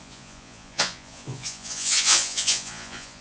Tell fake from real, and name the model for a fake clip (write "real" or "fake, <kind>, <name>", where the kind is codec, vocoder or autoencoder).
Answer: fake, vocoder, Vocos